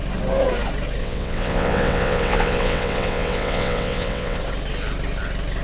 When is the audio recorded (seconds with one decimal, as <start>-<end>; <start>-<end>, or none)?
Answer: 0.0-1.0; 4.4-5.6